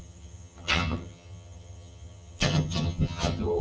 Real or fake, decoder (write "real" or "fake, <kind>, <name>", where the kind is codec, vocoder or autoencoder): fake, vocoder, HiFi-GAN